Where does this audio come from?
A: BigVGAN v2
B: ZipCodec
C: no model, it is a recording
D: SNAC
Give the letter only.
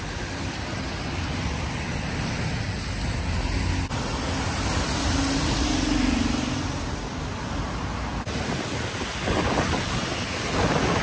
C